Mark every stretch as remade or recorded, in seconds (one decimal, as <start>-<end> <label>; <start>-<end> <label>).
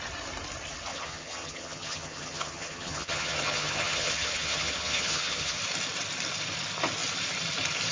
0.0-0.9 recorded; 0.9-5.6 remade; 5.6-7.9 recorded